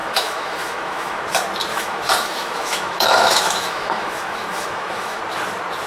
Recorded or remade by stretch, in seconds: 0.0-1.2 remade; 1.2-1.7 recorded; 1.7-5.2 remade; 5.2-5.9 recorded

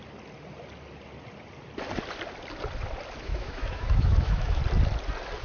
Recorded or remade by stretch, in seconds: 0.0-3.2 recorded; 3.2-4.6 remade; 4.6-5.4 recorded

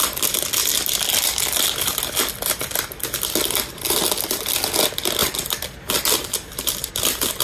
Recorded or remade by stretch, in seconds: 0.0-7.4 recorded

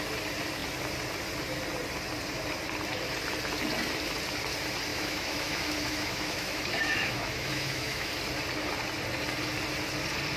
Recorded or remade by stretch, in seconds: 0.0-4.9 recorded; 4.9-8.1 remade; 8.1-10.4 recorded

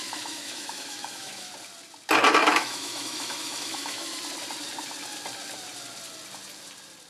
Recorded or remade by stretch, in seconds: 0.0-1.5 remade; 1.5-2.4 recorded; 2.4-4.2 remade; 4.2-7.1 recorded

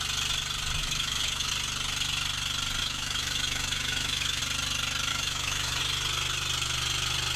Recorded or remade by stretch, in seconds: 0.0-0.8 recorded; 0.8-1.5 remade; 1.5-2.8 recorded; 2.8-4.4 remade; 4.4-5.1 recorded; 5.1-5.8 remade; 5.8-7.4 recorded